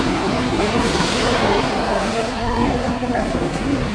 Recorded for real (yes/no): no